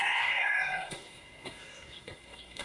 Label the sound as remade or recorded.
remade